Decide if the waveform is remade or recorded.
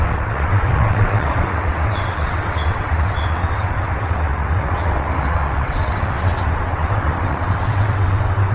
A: remade